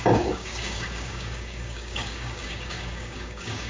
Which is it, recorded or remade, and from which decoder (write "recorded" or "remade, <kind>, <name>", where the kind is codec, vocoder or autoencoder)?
remade, codec, DAC